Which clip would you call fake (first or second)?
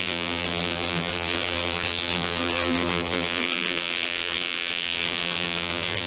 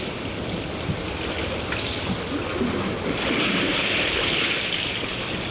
first